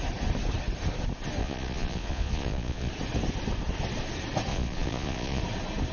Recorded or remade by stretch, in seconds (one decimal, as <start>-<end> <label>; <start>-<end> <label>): 0.0-1.4 recorded; 1.4-2.9 remade; 2.9-4.5 recorded; 4.5-5.4 remade; 5.4-5.9 recorded